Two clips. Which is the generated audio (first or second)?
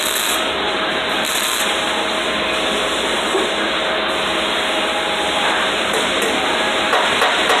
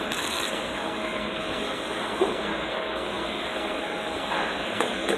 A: second